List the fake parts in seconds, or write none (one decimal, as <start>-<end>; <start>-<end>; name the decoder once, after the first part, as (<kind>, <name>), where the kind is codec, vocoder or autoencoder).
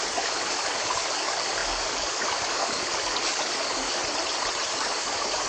0.0-4.0 (codec, DAC); 4.7-5.5